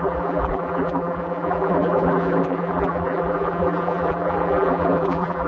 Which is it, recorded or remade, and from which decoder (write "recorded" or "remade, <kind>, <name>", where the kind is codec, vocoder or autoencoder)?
remade, vocoder, BigVGAN v2